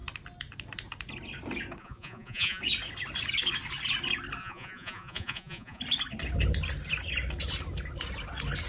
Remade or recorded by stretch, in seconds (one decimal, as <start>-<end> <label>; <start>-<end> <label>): 0.0-1.8 recorded; 1.8-2.6 remade; 2.6-4.4 recorded; 4.4-5.8 remade; 5.8-8.7 recorded